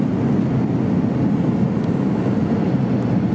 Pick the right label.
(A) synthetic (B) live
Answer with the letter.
B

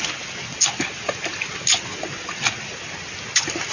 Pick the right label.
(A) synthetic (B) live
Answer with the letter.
B